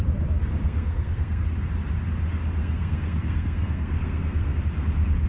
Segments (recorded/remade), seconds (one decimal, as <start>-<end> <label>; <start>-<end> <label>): 0.0-0.6 recorded; 0.6-1.4 remade; 1.4-2.6 recorded; 2.6-4.6 remade; 4.6-5.3 recorded